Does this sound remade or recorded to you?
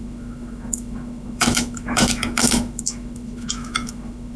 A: remade